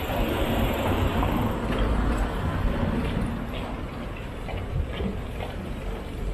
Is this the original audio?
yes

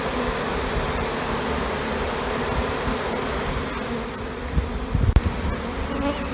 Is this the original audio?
yes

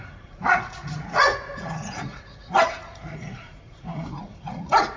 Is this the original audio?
no